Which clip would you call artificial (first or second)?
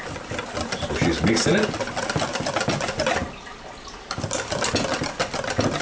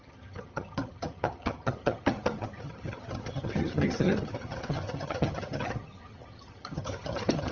second